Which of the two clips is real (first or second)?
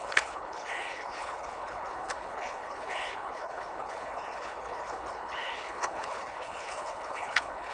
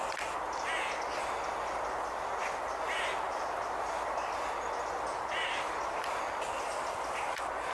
second